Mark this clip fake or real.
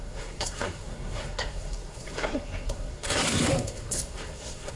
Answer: fake